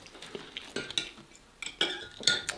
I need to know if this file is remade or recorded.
recorded